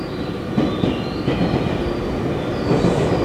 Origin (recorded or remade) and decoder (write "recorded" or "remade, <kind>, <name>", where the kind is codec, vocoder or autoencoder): recorded